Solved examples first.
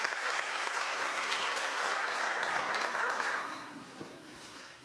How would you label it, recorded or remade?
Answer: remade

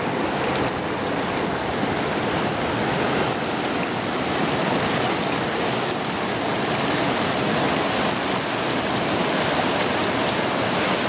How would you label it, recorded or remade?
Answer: recorded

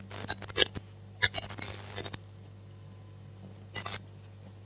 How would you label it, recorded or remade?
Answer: recorded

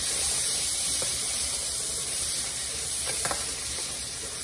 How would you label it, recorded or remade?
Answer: remade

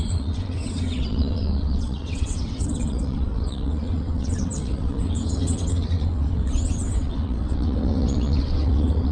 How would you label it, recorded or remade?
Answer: remade